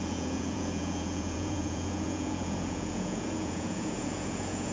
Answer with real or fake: fake